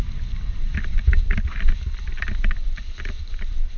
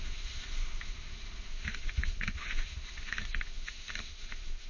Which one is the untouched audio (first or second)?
first